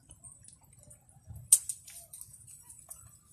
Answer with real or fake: real